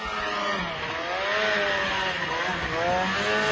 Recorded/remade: recorded